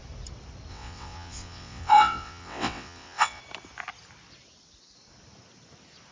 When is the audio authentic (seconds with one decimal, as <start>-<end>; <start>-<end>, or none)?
0.0-0.7; 3.4-6.1